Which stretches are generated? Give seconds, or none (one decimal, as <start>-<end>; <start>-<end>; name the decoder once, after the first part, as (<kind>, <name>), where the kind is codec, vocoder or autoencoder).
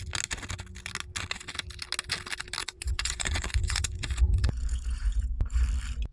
2.6-5.6 (vocoder, Vocos)